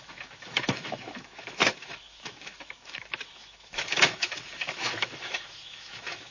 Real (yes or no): no